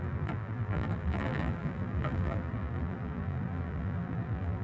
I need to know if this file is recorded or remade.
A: remade